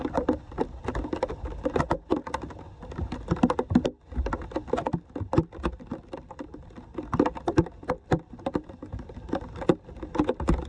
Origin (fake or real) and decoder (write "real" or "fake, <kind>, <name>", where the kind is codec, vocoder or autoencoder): real